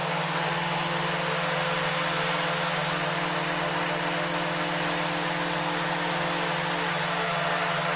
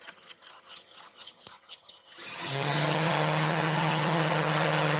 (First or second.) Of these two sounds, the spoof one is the second